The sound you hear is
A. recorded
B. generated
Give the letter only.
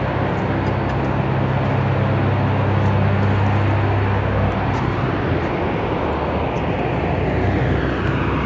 A